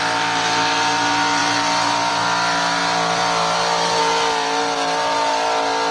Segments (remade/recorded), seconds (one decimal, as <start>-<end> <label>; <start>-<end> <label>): 0.0-5.9 recorded